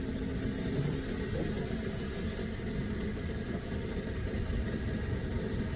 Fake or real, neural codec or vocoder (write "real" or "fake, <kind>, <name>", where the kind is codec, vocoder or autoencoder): real